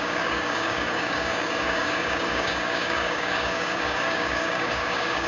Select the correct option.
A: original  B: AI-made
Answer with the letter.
B